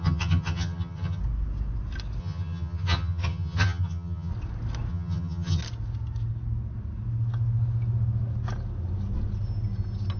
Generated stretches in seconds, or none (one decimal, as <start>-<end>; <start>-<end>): 0.0-1.2; 2.2-4.3; 4.9-5.6